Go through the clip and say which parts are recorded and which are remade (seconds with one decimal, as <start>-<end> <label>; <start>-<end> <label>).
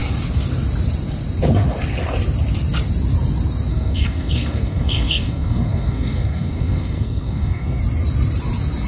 0.0-3.7 recorded; 3.7-7.8 remade; 7.8-8.9 recorded